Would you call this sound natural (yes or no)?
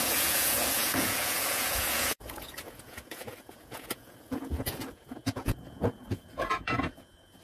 no